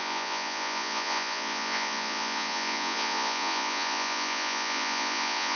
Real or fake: fake